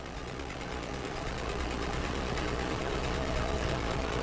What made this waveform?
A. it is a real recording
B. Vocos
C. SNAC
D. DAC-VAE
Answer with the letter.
B